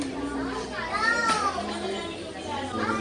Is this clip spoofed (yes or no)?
no